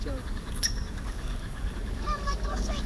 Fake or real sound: fake